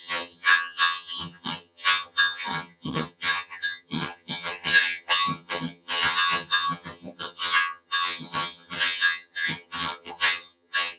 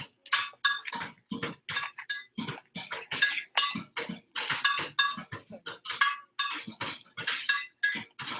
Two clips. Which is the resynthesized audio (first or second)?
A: first